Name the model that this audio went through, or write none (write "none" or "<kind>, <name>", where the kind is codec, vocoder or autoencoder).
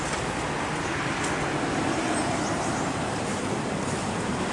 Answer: none